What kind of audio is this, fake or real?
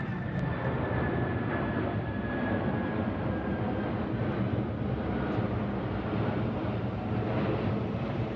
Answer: real